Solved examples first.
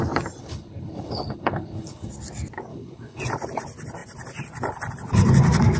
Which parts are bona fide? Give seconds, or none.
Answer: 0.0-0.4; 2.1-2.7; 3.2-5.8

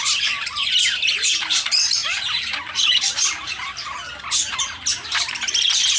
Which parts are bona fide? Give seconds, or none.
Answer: 0.0-6.0

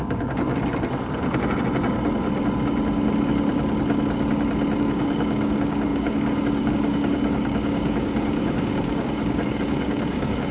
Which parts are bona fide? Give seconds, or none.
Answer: 0.6-4.8

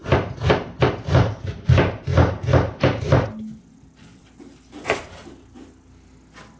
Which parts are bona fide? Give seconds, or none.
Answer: 0.0-4.1; 5.6-6.6